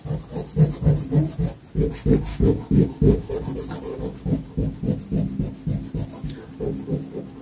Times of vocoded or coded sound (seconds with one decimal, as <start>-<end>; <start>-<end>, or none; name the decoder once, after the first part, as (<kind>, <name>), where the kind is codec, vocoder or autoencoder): 2.3-3.3 (codec, DAC); 3.9-4.8